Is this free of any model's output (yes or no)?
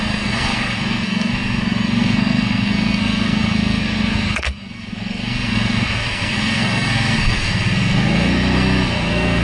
no